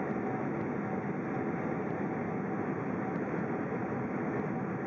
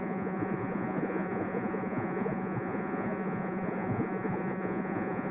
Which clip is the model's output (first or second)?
second